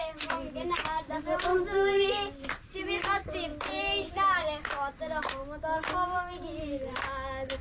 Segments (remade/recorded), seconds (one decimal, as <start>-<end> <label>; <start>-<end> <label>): 0.0-1.5 remade; 1.5-2.5 recorded; 2.5-5.4 remade; 5.4-7.6 recorded